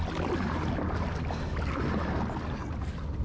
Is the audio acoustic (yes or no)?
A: yes